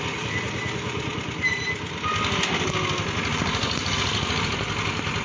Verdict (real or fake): real